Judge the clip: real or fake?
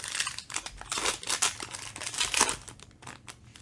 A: real